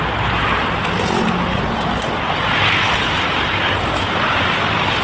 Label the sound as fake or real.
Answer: real